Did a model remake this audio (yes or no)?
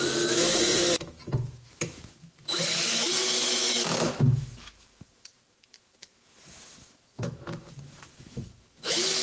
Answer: yes